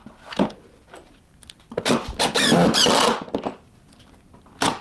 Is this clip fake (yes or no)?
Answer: no